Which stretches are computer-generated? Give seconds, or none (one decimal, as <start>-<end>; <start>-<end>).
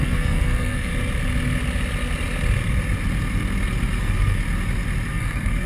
0.0-0.9; 4.0-4.4; 5.1-5.7